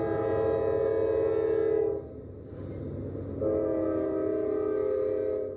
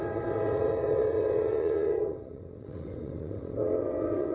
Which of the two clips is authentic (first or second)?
first